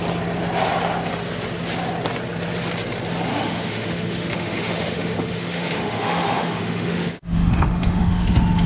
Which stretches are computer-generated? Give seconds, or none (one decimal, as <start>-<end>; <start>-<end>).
3.3-8.7